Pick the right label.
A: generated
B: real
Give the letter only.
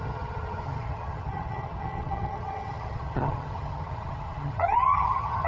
A